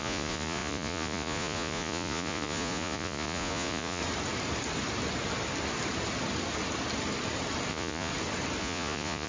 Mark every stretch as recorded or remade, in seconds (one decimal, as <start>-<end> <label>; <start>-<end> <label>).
0.0-4.0 remade; 4.0-7.7 recorded; 7.7-8.1 remade; 8.1-8.6 recorded; 8.6-9.3 remade